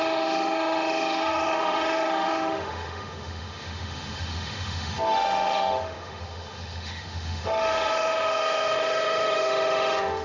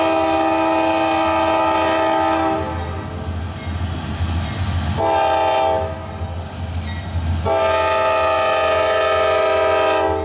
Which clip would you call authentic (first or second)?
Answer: second